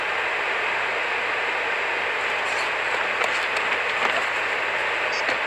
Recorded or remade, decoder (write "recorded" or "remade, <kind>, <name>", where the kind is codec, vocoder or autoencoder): recorded